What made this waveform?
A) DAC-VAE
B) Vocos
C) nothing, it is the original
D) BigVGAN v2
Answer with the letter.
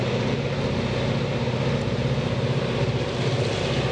C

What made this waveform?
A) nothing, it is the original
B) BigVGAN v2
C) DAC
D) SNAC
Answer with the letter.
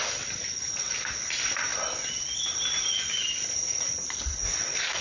A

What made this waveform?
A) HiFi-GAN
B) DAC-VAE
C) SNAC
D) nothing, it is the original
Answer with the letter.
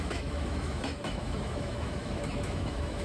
B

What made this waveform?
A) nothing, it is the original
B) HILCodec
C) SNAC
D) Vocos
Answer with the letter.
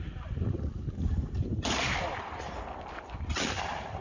A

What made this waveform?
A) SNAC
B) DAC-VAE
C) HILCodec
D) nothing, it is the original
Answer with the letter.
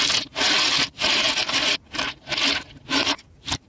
D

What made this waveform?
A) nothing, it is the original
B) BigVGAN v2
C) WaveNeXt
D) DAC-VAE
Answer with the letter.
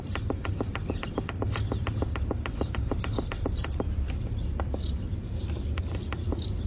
B